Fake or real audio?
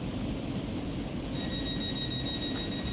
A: real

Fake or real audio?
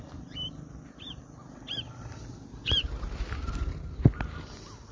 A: real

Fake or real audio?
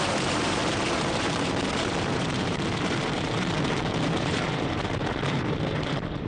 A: fake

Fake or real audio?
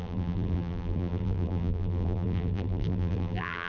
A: fake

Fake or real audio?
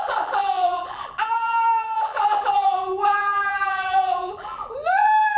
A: fake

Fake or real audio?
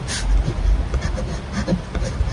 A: real